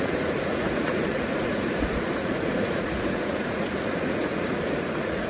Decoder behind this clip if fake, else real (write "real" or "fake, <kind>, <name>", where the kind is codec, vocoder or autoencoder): fake, vocoder, Vocos